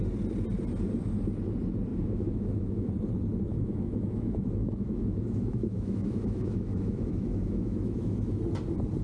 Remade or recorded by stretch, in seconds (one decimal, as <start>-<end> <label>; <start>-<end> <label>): 0.0-1.9 recorded; 1.9-2.9 remade; 2.9-3.5 recorded; 3.5-8.4 remade; 8.4-9.0 recorded